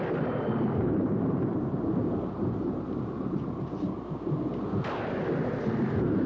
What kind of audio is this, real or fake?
real